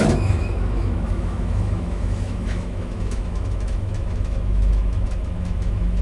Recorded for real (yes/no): no